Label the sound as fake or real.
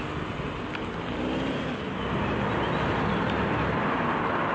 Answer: real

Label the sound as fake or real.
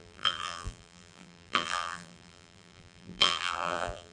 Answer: fake